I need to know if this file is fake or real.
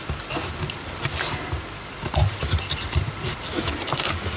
real